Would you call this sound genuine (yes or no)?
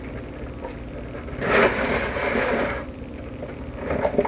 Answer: yes